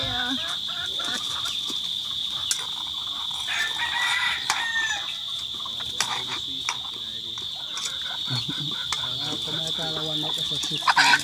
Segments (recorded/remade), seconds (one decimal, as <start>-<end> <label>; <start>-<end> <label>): 0.0-2.5 remade; 2.5-4.1 recorded; 4.1-4.6 remade; 4.6-5.5 recorded; 5.5-6.4 remade; 6.4-11.2 recorded